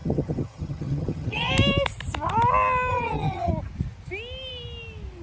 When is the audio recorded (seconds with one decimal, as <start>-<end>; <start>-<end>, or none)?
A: 1.5-2.9; 3.5-5.2